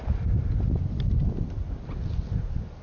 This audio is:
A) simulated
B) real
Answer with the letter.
B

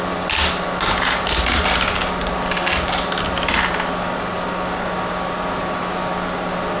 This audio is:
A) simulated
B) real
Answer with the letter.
B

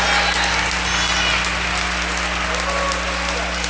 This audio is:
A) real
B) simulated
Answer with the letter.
A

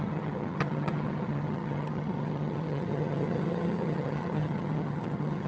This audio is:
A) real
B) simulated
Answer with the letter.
B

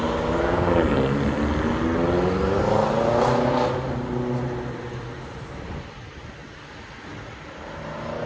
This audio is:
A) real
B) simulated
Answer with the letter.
A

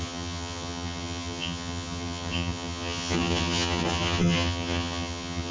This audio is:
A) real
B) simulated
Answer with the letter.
B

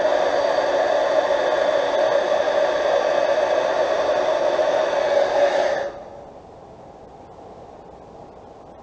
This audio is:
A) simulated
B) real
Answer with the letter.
B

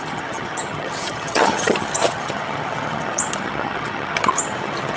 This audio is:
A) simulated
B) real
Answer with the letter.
A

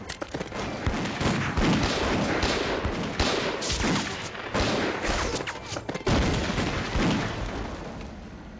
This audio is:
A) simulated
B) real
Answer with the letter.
B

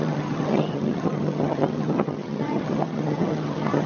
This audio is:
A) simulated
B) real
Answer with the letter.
A